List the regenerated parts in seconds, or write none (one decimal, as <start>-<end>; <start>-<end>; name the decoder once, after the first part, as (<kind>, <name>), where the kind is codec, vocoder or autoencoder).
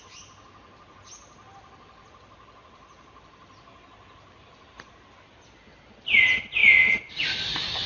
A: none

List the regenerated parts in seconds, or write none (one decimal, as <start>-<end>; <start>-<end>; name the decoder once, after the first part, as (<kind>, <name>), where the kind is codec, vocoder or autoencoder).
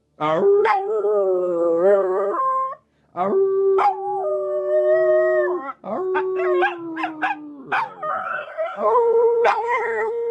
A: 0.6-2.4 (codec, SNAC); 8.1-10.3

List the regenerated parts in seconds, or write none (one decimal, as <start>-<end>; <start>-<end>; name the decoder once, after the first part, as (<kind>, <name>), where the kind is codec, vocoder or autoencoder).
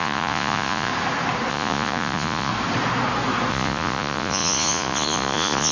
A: 0.0-0.9 (vocoder, Vocos); 1.5-2.5; 3.5-5.7